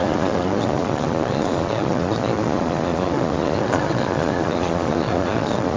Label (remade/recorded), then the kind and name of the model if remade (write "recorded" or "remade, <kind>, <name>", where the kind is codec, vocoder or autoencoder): remade, vocoder, Vocos